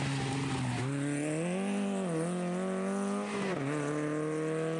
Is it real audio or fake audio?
real